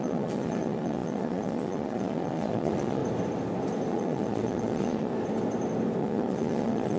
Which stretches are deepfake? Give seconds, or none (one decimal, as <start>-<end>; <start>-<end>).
0.0-3.0; 3.9-5.1; 6.0-7.0